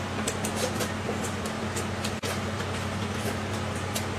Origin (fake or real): real